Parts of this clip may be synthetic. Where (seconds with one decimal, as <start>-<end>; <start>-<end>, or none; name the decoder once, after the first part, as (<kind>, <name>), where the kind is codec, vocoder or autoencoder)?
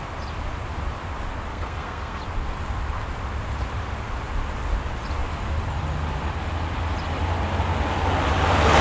1.5-2.2 (codec, SNAC)